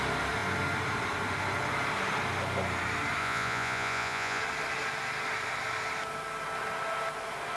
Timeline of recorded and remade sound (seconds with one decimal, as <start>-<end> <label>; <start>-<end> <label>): 0.0-3.2 recorded; 3.2-4.4 remade; 4.4-7.6 recorded